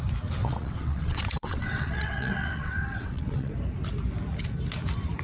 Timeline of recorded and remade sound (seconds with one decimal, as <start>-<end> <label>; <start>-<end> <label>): 0.0-0.4 recorded; 0.4-3.5 remade; 3.5-5.2 recorded